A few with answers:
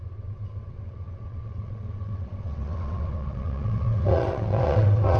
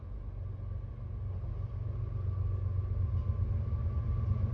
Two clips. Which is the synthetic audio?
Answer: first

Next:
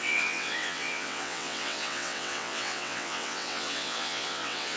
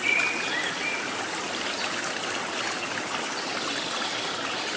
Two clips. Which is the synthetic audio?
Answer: first